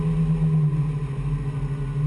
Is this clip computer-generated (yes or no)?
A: no